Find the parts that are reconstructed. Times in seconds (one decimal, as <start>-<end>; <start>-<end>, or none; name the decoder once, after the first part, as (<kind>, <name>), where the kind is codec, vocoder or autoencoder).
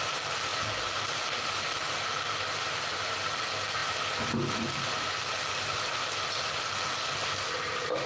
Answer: none